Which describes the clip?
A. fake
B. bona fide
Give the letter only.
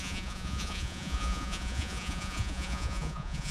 A